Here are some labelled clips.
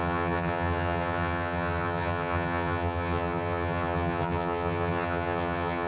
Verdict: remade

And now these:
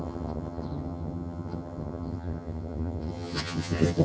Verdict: remade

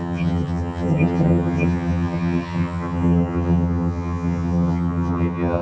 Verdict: remade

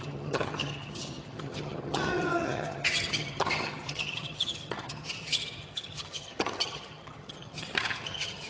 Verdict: remade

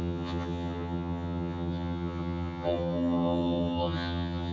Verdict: remade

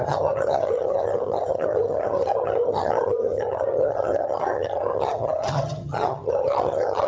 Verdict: remade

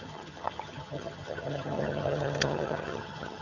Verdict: remade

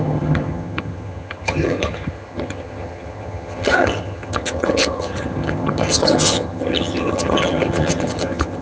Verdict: remade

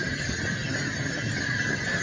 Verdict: recorded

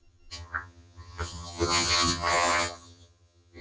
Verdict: remade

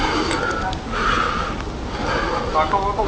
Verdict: recorded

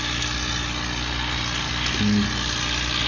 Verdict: recorded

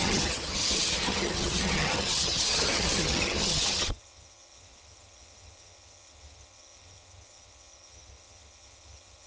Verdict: remade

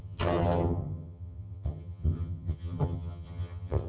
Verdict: remade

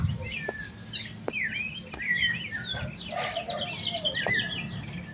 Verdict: recorded